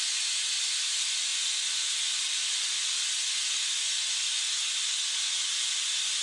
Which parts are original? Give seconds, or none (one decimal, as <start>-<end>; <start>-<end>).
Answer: 0.0-6.2